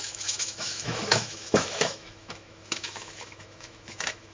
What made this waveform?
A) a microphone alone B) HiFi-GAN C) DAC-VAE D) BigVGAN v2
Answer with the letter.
C